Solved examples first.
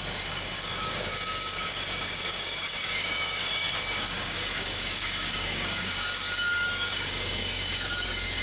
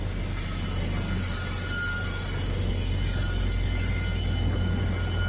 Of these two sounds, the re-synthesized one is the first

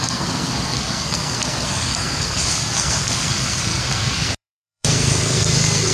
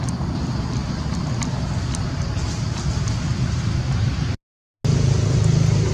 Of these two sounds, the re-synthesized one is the first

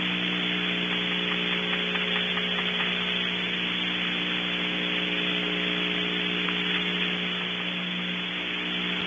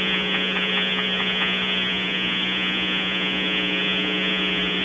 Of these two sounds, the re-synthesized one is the second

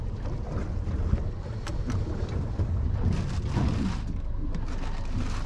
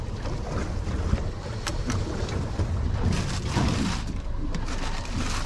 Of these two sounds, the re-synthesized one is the second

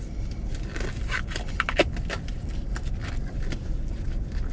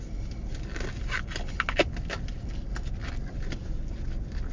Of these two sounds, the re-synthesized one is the first